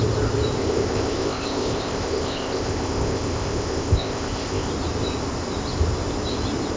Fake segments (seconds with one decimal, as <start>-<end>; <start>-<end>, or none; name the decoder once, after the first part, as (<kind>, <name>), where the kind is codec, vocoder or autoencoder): 0.6-4.7 (codec, ZipCodec)